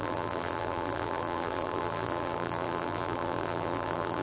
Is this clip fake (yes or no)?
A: yes